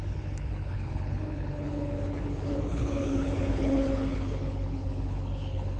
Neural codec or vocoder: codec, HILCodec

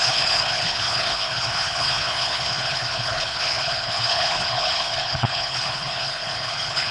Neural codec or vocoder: codec, HILCodec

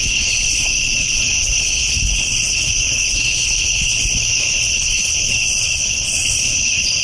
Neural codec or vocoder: codec, HILCodec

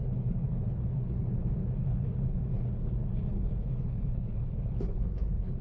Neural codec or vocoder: codec, HILCodec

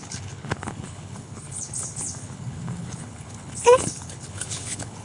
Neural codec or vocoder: codec, HILCodec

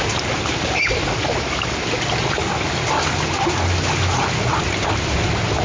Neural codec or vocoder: none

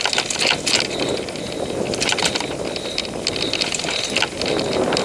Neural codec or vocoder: none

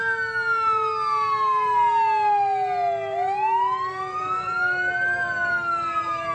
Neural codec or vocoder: none